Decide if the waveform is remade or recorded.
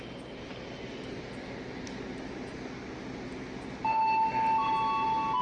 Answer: recorded